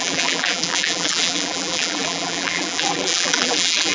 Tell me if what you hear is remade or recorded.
remade